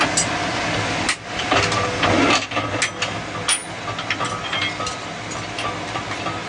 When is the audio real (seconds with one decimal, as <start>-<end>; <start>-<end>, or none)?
0.0-6.5